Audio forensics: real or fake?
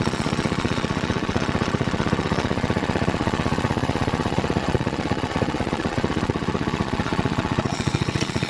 fake